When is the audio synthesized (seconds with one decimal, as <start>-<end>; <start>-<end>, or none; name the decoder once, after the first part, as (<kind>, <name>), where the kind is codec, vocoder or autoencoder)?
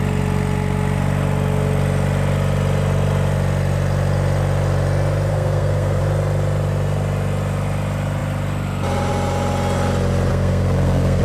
5.3-6.0 (codec, SNAC); 10.3-11.2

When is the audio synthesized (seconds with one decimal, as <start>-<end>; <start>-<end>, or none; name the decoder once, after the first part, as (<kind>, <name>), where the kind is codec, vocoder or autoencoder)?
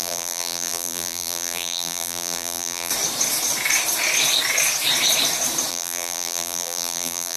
0.0-2.9 (vocoder, BigVGAN v2); 5.7-7.4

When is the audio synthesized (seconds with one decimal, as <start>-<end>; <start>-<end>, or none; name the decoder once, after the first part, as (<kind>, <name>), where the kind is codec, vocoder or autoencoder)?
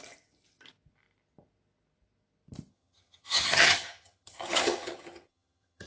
2.7-5.9 (vocoder, HiFi-GAN)